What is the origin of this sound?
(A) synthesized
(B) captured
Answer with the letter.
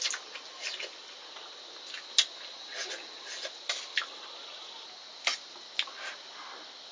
B